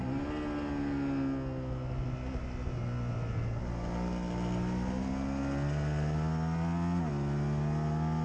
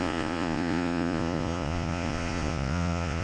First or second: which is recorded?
first